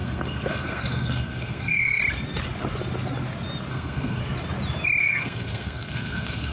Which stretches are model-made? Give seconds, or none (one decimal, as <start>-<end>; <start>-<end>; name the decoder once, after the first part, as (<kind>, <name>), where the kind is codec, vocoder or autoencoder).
0.0-2.0 (codec, SNAC); 3.7-4.2; 5.0-6.5